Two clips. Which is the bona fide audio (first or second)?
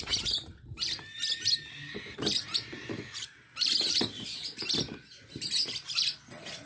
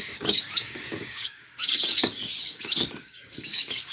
first